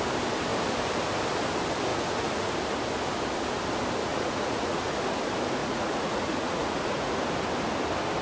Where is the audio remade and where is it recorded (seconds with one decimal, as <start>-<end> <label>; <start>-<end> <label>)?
0.0-1.9 recorded; 1.9-2.5 remade; 2.5-4.1 recorded; 4.1-4.9 remade; 4.9-5.6 recorded; 5.6-7.2 remade; 7.2-8.2 recorded